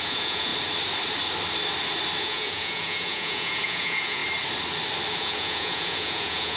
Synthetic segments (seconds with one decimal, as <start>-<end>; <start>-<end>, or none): 0.0-0.5; 2.2-4.2; 5.1-6.6